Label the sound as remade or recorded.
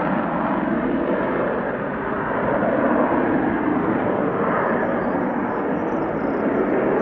recorded